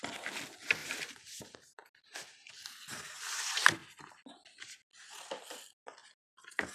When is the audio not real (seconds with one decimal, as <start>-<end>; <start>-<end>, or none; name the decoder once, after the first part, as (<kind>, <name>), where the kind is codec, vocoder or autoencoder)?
0.8-2.5 (vocoder, BigVGAN v2); 6.0-6.7